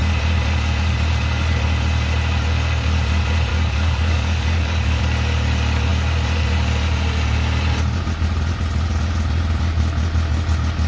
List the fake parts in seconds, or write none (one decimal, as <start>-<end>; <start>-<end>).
3.5-5.0